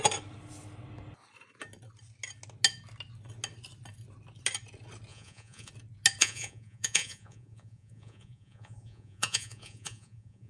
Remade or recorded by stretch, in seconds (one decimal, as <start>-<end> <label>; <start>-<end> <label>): 0.0-5.1 recorded; 5.1-5.7 remade; 5.7-6.2 recorded; 6.2-10.5 remade